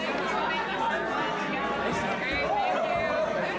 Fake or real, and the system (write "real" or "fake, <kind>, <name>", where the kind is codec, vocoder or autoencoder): real